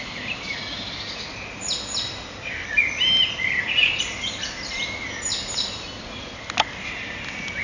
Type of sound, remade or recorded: recorded